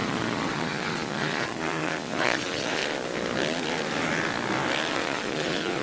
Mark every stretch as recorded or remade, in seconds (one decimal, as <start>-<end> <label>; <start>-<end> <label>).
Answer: 0.0-2.8 remade; 2.8-4.9 recorded; 4.9-5.8 remade